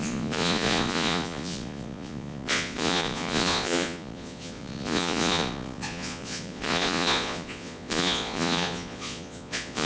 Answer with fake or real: fake